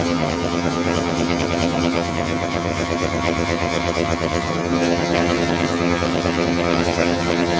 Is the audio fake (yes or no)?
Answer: yes